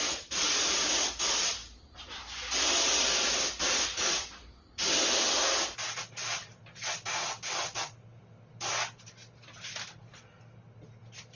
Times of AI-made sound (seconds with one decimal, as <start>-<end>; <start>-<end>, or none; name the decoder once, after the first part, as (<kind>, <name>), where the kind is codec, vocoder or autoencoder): none